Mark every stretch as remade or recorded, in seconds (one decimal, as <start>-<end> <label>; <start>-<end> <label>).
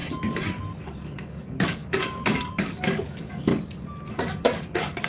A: 0.0-0.8 recorded; 0.8-3.5 remade; 3.5-4.1 recorded; 4.1-5.1 remade